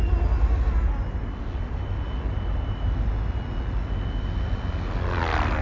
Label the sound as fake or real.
real